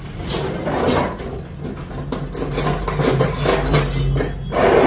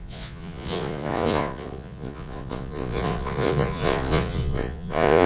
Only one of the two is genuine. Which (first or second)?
first